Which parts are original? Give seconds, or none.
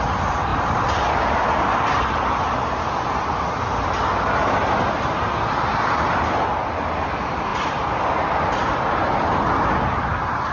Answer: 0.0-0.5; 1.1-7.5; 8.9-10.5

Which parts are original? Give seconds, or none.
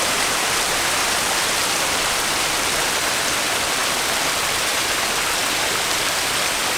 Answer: none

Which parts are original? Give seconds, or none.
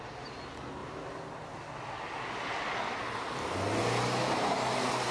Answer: 0.0-5.1